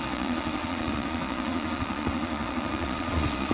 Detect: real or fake fake